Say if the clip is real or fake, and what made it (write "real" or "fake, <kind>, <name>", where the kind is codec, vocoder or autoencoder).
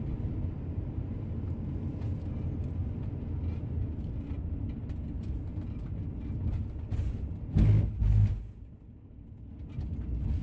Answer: real